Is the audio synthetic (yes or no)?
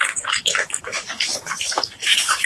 yes